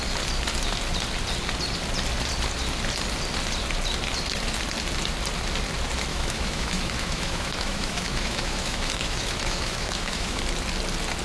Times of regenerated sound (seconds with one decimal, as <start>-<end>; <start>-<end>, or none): 6.1-10.4